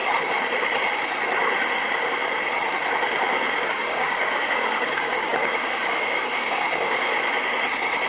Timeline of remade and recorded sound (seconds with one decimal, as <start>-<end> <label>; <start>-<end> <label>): 0.0-3.7 recorded; 3.7-7.1 remade; 7.1-8.1 recorded